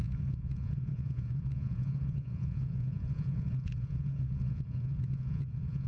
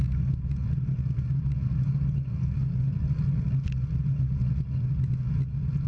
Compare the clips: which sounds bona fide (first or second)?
second